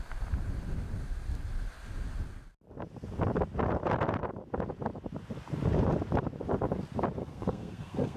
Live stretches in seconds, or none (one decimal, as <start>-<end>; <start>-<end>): 0.0-7.2